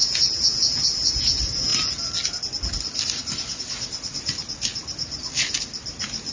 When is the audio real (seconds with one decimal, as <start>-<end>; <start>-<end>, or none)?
0.6-6.3